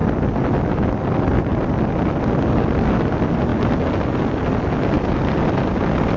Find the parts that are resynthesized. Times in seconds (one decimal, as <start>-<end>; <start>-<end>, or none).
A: none